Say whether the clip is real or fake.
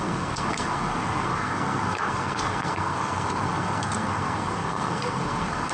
fake